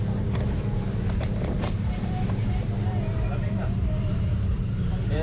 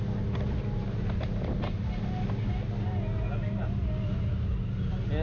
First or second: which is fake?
first